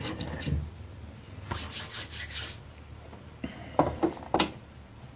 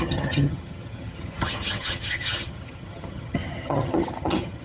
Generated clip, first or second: second